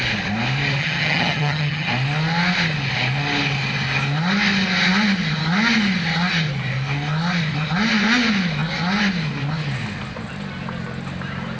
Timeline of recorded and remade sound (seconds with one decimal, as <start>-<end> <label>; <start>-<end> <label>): 0.0-0.8 recorded; 0.8-1.9 remade; 1.9-11.6 recorded